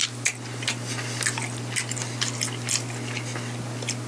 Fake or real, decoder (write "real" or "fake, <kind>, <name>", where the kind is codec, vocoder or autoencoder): real